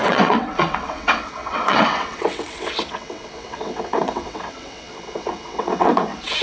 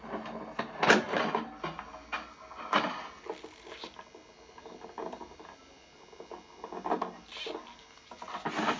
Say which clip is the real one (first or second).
second